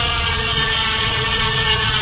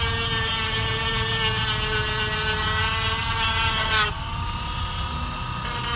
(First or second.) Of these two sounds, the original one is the second